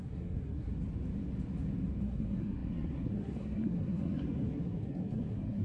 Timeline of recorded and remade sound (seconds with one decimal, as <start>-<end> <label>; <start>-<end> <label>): 0.0-0.7 remade; 0.7-2.0 recorded; 2.0-5.6 remade